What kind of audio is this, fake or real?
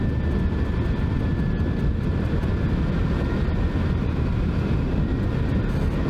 real